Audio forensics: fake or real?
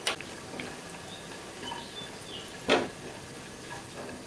real